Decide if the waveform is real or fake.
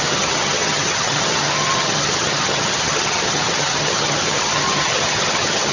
fake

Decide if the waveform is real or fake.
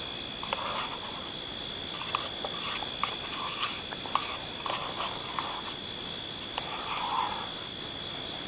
real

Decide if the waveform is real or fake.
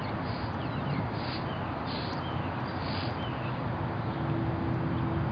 real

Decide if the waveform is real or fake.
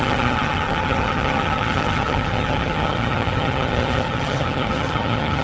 fake